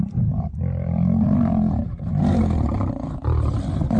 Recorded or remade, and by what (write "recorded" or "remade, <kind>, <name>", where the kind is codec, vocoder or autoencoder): recorded